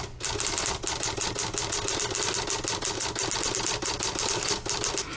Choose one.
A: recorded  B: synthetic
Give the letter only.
A